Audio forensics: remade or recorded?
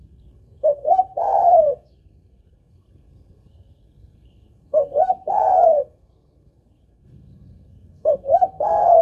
remade